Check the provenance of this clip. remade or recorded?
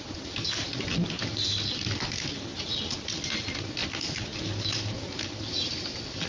recorded